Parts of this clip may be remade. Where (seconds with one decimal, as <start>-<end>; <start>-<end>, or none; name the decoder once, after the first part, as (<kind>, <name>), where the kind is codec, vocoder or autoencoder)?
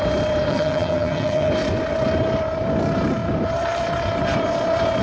0.5-1.5 (vocoder, HiFi-GAN)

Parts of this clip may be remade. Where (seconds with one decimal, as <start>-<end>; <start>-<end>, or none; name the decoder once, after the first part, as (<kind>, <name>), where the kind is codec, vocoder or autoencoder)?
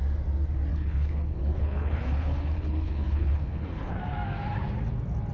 0.7-3.9 (codec, HILCodec)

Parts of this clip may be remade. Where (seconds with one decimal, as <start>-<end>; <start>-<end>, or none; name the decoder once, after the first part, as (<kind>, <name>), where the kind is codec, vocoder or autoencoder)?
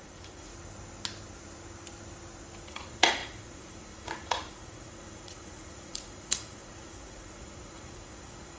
0.0-0.5 (vocoder, Vocos); 2.7-8.6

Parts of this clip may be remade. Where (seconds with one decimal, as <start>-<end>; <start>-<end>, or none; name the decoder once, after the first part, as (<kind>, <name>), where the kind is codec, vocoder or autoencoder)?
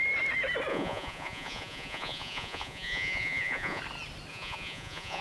0.7-3.8 (vocoder, Vocos); 4.3-5.2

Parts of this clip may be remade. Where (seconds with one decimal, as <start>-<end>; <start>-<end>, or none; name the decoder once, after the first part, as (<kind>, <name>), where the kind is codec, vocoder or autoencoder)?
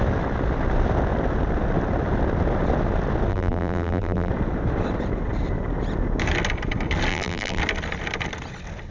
3.3-4.3 (vocoder, BigVGAN v2); 7.1-7.6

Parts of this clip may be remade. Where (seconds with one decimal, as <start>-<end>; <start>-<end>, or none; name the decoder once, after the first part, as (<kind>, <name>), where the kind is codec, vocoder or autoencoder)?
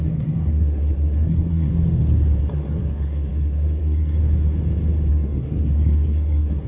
0.0-1.7 (codec, SNAC); 2.4-4.2; 5.1-6.7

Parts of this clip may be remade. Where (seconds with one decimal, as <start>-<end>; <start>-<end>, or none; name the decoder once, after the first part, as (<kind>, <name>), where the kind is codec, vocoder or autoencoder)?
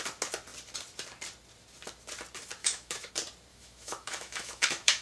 2.6-3.1 (autoencoder, DAC-VAE); 3.5-5.0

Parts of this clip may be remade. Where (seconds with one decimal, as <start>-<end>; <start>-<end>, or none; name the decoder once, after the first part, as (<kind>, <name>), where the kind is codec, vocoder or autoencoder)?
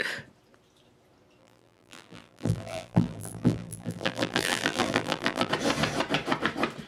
1.4-5.5 (vocoder, BigVGAN v2)